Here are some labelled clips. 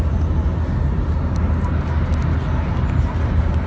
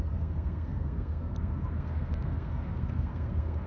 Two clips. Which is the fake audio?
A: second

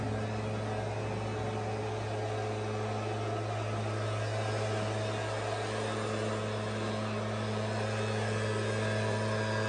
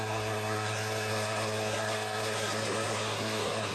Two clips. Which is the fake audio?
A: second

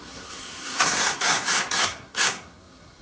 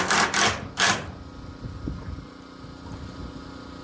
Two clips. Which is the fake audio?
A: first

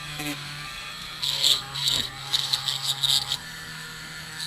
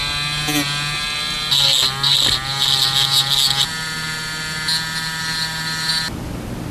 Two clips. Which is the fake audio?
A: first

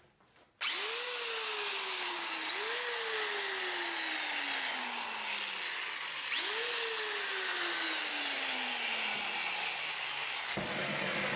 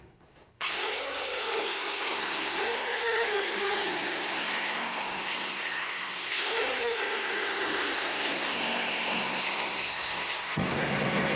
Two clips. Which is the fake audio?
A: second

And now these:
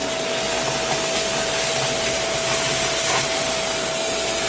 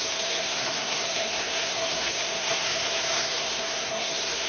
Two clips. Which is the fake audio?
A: second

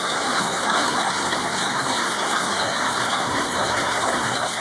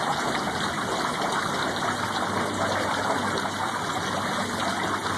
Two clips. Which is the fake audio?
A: first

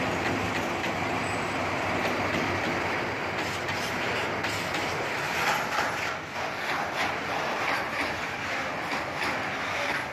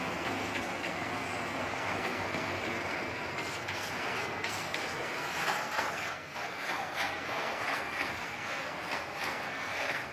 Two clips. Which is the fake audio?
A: second